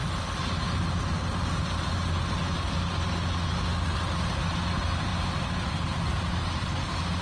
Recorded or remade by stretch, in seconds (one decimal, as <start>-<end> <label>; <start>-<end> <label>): 0.0-5.1 recorded; 5.1-6.1 remade; 6.1-7.2 recorded